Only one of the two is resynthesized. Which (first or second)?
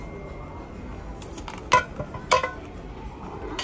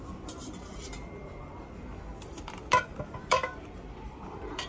second